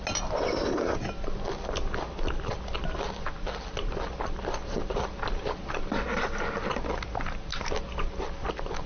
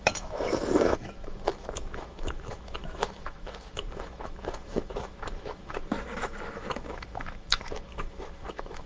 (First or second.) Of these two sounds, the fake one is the second